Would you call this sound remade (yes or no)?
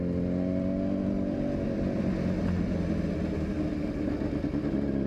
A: no